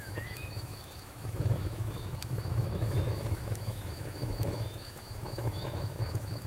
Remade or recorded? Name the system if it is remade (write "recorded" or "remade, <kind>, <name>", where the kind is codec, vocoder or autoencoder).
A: remade, autoencoder, DAC-VAE